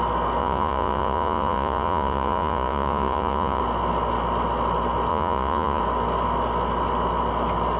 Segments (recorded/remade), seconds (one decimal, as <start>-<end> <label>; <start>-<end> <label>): 0.0-0.4 recorded; 0.4-3.6 remade; 3.6-5.1 recorded; 5.1-5.8 remade; 5.8-7.8 recorded